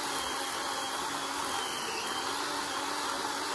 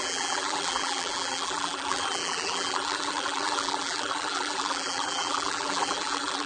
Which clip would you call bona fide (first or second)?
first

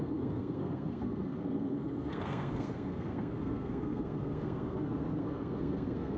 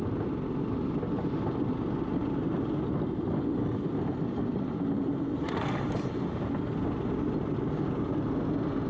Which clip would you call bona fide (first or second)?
second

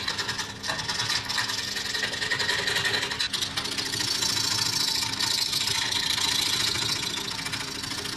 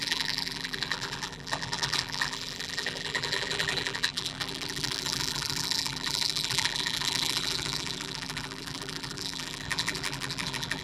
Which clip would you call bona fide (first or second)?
first